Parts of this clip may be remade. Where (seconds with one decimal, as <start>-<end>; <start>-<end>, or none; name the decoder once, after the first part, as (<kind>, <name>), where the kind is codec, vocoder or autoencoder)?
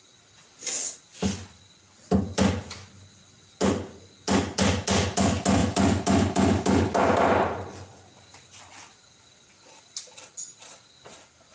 none